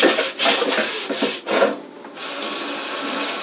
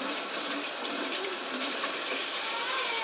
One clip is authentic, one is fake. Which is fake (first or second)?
second